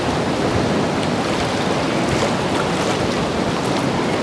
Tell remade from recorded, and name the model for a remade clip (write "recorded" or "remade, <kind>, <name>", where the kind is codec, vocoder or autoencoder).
recorded